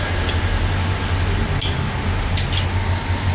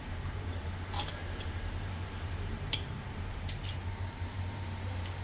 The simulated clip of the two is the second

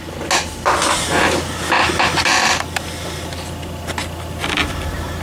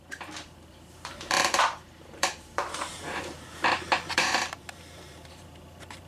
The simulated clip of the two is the second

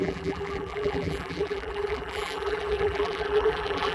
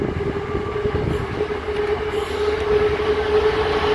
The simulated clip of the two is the first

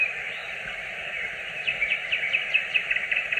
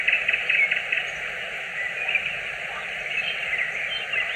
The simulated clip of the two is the first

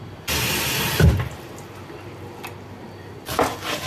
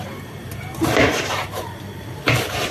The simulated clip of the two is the second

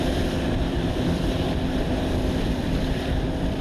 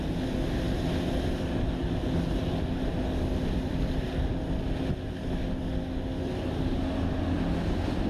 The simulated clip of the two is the first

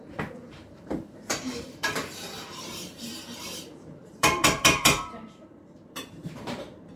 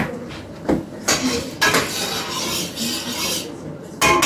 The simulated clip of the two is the first